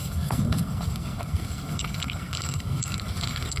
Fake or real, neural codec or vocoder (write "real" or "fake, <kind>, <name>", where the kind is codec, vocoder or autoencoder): fake, codec, SNAC